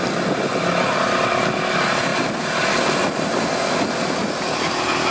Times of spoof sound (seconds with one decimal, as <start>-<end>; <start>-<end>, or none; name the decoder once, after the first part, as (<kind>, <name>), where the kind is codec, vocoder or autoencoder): none